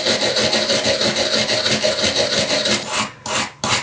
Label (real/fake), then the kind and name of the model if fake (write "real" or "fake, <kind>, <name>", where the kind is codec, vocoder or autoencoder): real